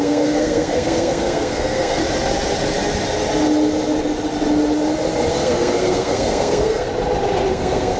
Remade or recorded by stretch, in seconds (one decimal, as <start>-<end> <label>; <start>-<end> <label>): 0.0-2.0 remade; 2.0-5.3 recorded; 5.3-6.9 remade; 6.9-7.5 recorded; 7.5-8.0 remade

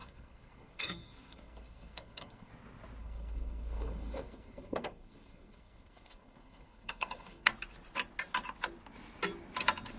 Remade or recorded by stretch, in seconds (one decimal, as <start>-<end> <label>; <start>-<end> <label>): 0.0-2.5 remade; 2.5-3.0 recorded; 3.0-7.5 remade; 7.5-10.0 recorded